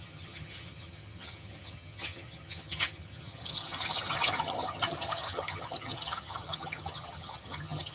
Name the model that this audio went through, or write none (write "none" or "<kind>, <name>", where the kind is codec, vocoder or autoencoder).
vocoder, HiFi-GAN